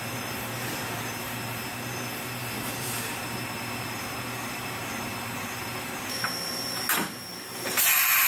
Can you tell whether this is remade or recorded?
remade